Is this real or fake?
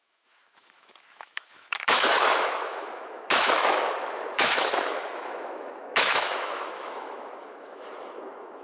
fake